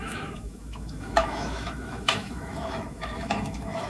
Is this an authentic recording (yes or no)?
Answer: no